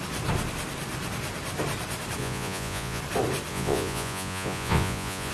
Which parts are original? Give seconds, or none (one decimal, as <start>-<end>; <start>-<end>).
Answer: 0.0-2.2; 3.0-3.5